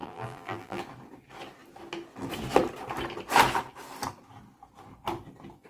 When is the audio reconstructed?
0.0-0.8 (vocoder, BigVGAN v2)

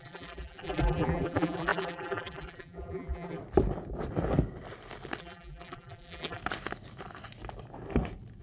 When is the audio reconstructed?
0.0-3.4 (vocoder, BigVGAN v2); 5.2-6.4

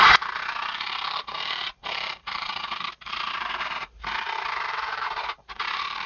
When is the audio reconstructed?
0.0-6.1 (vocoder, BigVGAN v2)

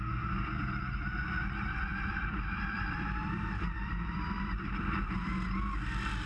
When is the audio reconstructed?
0.0-5.3 (vocoder, BigVGAN v2)

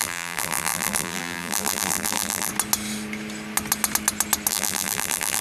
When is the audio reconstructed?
0.0-2.5 (vocoder, BigVGAN v2); 4.5-5.4